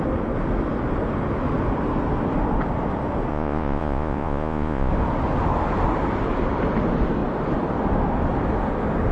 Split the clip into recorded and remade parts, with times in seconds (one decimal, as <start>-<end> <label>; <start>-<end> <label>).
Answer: 0.0-3.3 recorded; 3.3-4.9 remade; 4.9-9.1 recorded